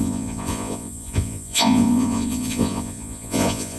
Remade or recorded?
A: remade